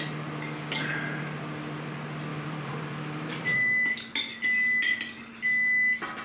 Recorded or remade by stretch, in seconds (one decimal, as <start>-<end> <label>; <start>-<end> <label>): 0.0-2.3 recorded; 2.3-3.9 remade; 3.9-6.2 recorded